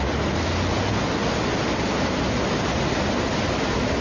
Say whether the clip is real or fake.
real